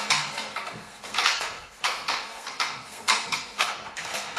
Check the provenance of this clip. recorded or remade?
remade